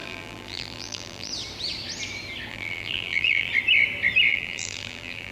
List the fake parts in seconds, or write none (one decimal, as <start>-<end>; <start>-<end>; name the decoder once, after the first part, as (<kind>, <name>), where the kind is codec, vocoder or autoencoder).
0.0-1.3 (vocoder, BigVGAN v2); 2.5-3.5; 4.3-5.3